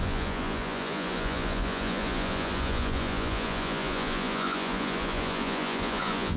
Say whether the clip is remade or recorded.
remade